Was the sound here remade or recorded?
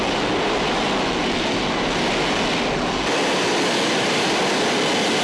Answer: recorded